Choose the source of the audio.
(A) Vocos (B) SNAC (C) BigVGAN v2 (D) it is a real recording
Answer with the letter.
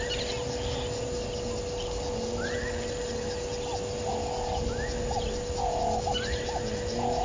D